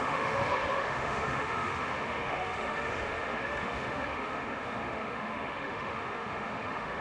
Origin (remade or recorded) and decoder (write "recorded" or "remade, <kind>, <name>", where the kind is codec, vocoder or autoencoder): remade, autoencoder, DAC-VAE